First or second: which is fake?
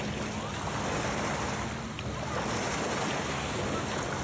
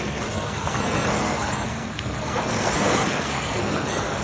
second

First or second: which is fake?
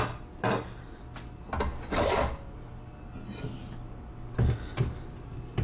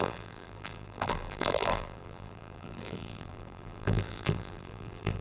second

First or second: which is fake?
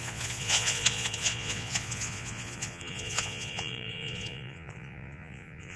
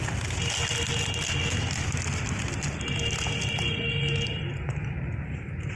first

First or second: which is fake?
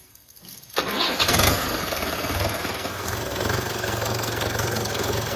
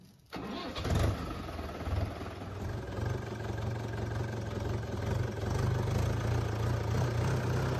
first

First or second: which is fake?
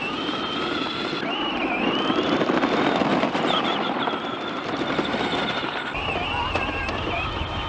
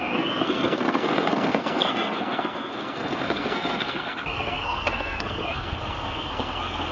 second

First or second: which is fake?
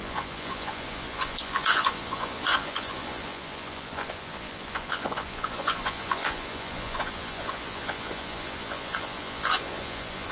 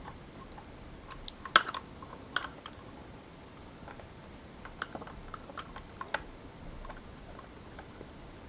first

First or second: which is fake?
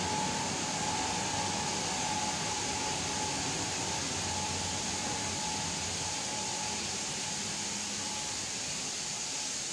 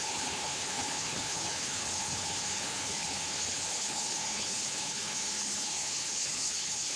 second